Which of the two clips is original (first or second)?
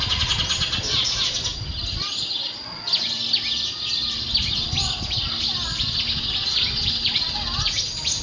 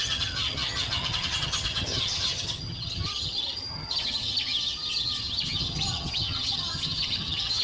first